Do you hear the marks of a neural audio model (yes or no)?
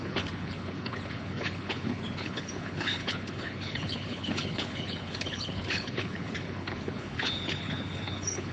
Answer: yes